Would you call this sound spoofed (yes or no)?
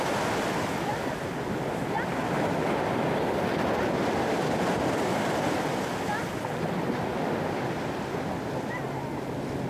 no